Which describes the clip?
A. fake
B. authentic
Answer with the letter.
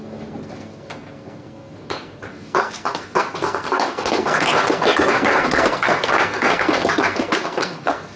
A